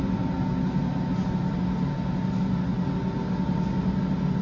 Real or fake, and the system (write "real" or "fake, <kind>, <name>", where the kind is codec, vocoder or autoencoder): real